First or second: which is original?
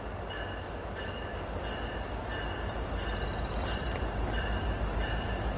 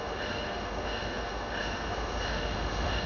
first